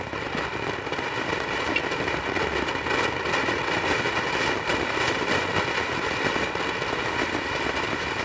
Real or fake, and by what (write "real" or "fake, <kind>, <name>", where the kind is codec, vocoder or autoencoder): real